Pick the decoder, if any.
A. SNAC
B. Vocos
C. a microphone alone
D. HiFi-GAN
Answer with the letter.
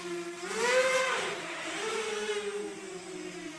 C